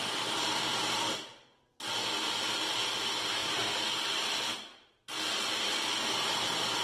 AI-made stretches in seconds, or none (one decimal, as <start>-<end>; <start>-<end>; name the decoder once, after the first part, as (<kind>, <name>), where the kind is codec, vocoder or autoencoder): 0.0-1.3 (vocoder, BigVGAN v2); 2.6-3.4